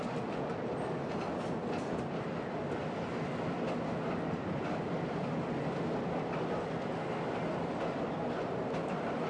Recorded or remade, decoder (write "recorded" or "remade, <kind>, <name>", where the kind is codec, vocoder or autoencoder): recorded